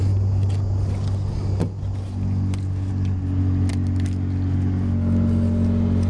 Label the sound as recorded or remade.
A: recorded